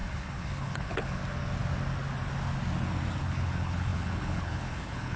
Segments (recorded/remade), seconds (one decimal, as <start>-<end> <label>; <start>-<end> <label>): 0.0-1.2 remade; 1.2-3.2 recorded; 3.2-5.2 remade